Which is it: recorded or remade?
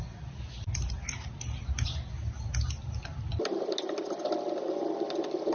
recorded